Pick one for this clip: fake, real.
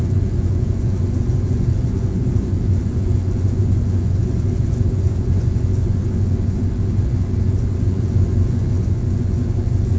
fake